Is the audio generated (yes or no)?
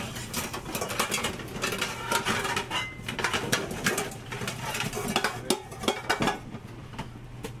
no